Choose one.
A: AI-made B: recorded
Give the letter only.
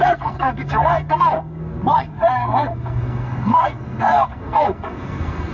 A